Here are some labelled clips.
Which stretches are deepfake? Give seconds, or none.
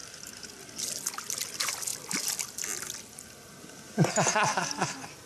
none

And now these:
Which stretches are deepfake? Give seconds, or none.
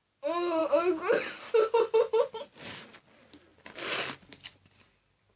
3.5-5.4 (vocoder, BigVGAN v2)